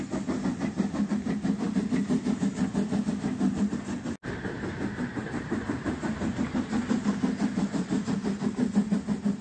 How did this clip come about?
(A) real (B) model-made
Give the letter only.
A